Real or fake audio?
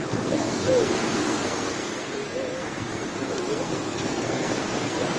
fake